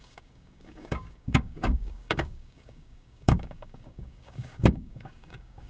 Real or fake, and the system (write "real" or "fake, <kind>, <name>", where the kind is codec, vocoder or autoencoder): fake, codec, DAC